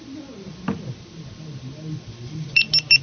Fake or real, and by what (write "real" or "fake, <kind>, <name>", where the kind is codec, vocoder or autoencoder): real